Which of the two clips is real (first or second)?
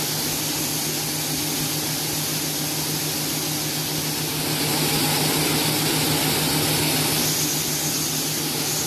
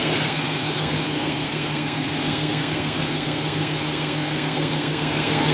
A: first